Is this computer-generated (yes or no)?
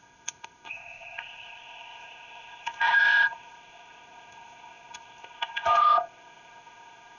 yes